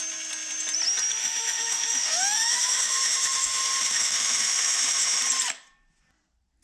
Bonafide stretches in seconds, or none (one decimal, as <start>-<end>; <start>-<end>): 0.0-1.2; 5.2-6.6